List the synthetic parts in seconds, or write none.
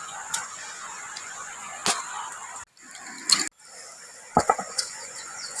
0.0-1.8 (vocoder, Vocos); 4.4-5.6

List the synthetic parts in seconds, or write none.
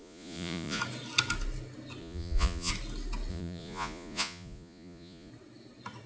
0.0-0.8 (vocoder, Vocos); 2.0-2.7; 3.3-5.3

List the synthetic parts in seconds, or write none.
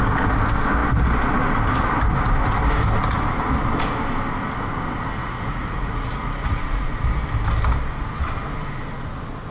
5.2-6.9 (vocoder, Vocos)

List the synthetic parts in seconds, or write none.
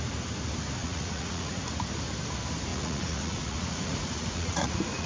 0.8-1.6 (vocoder, Vocos); 2.7-5.1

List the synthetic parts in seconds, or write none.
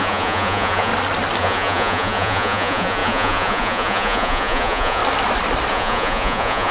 0.0-0.9 (vocoder, Vocos); 1.4-5.0; 5.7-6.7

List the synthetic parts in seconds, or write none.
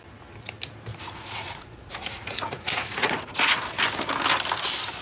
0.9-3.6 (vocoder, Vocos)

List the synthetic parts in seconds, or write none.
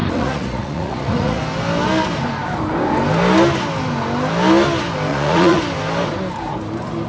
0.0-1.4 (vocoder, Vocos); 5.1-5.6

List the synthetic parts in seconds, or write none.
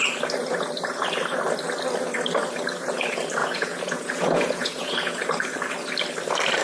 3.4-5.3 (vocoder, Vocos)